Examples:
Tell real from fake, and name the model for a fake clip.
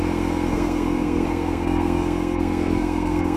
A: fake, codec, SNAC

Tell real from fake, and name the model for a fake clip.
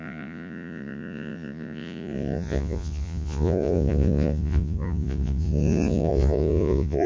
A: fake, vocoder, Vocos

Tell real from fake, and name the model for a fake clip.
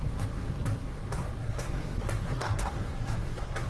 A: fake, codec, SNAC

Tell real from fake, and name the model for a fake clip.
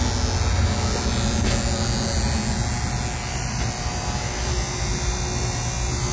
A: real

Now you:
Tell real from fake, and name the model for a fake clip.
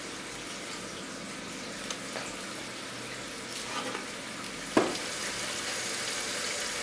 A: real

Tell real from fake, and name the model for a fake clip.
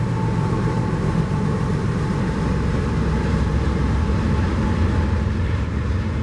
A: fake, vocoder, BigVGAN v2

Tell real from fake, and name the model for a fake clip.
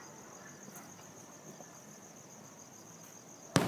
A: real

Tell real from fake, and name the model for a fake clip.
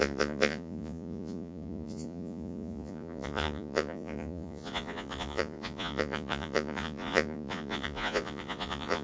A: fake, vocoder, Vocos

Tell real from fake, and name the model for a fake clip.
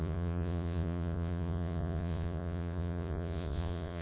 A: fake, vocoder, Vocos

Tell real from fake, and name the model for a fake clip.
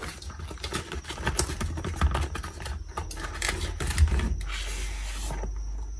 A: real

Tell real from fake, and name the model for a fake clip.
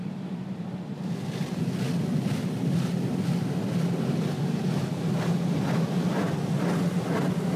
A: real